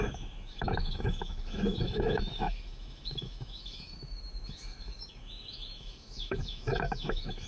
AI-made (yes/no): yes